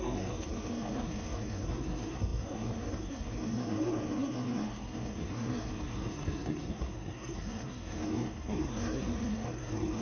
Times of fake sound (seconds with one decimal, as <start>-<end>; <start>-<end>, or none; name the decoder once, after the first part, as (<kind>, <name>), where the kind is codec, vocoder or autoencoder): 0.0-10.0 (codec, SNAC)